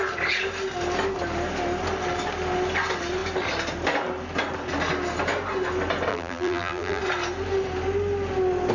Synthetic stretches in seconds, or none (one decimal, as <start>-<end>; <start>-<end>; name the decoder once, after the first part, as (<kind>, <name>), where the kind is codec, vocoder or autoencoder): 6.1-7.0 (vocoder, BigVGAN v2)